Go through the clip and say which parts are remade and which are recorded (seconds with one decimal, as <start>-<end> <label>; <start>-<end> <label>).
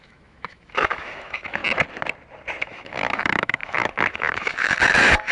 0.0-1.6 remade; 1.6-2.6 recorded; 2.6-5.3 remade